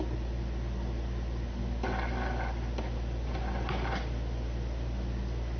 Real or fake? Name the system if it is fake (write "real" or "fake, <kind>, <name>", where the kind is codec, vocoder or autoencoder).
real